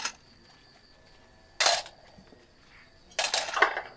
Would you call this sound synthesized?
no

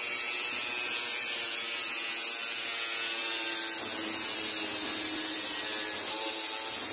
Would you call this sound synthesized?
no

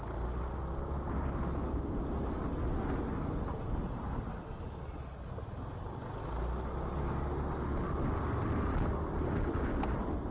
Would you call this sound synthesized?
no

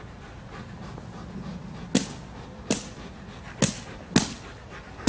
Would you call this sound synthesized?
no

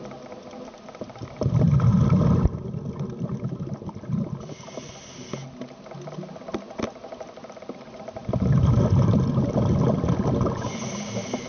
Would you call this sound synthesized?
no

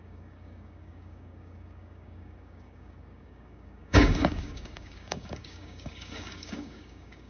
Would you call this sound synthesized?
yes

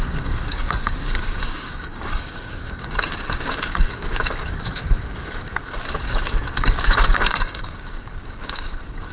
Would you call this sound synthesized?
yes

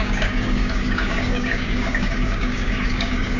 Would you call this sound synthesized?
yes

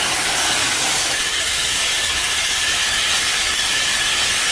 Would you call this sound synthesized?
yes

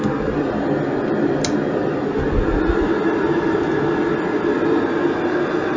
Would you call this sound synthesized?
no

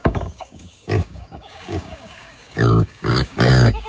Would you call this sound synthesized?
yes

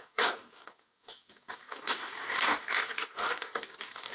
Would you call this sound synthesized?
yes